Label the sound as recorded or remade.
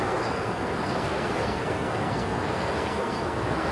remade